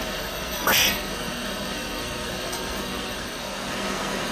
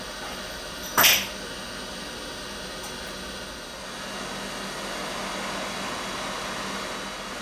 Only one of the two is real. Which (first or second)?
second